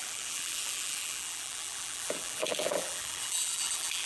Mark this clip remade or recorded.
remade